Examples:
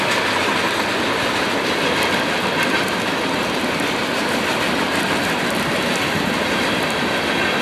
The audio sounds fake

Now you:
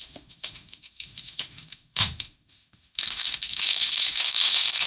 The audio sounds fake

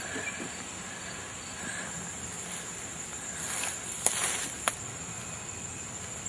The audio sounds real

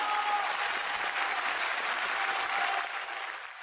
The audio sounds real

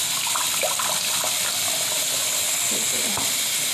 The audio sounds real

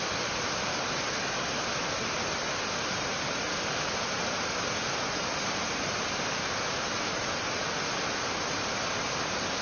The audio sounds real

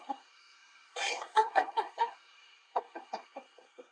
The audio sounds fake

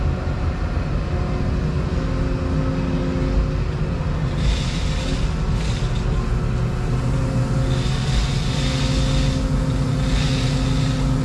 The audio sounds real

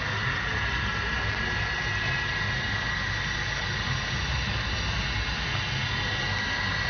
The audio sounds real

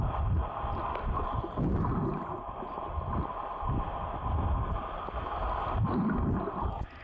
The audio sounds real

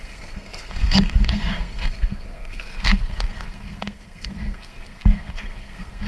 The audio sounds fake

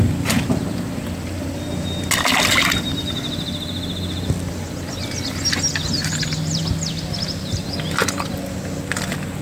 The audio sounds real